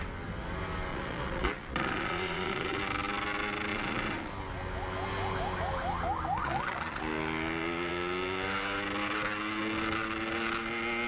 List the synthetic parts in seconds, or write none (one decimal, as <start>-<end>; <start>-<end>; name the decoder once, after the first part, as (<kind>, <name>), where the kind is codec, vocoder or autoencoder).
0.9-2.8 (vocoder, Vocos); 3.7-4.3; 6.4-7.0